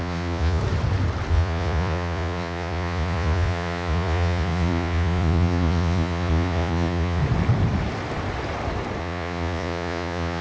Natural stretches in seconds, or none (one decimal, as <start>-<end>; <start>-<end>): 0.6-1.3; 7.2-9.0